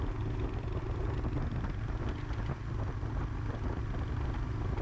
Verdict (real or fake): real